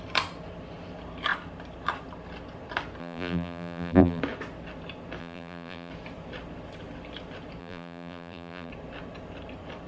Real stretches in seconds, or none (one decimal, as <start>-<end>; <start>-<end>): 0.0-3.0; 4.2-5.2; 5.9-7.6; 8.7-9.9